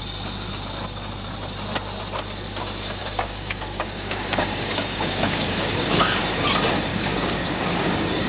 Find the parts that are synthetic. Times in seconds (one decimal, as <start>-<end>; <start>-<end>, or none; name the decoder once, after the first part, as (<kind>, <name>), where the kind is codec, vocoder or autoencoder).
3.0-6.2 (codec, DAC); 6.9-8.3